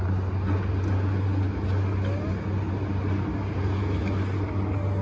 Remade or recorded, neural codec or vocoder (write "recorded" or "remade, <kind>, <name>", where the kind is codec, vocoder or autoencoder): recorded